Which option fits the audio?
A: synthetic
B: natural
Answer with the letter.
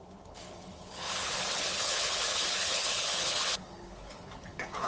A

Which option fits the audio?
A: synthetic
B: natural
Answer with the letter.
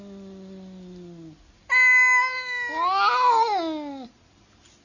B